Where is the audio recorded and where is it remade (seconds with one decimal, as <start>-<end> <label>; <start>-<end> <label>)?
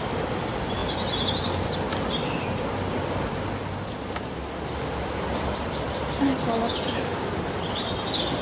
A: 0.0-8.4 recorded